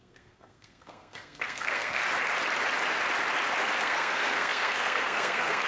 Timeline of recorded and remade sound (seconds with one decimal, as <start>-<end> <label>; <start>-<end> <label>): 0.0-2.0 remade; 2.0-3.8 recorded; 3.8-5.7 remade